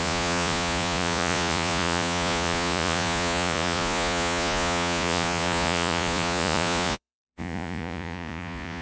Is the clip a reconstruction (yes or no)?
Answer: yes